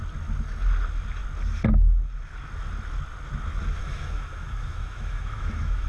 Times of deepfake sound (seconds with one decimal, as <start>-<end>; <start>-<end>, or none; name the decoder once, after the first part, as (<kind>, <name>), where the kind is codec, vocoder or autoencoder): 3.8-5.9 (autoencoder, DAC-VAE)